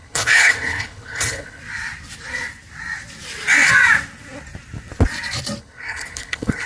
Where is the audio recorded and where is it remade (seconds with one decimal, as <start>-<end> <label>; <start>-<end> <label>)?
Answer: 0.0-1.6 remade; 1.6-5.6 recorded; 5.6-6.7 remade